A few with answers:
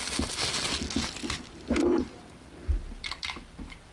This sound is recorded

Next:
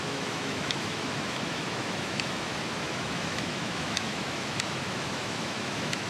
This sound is remade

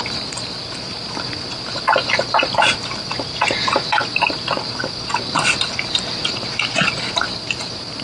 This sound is recorded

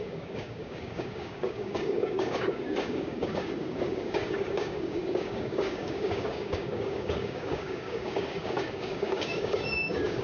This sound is remade